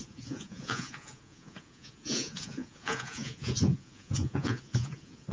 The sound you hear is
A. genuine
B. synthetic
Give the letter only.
B